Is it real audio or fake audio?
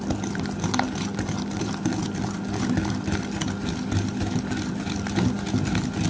fake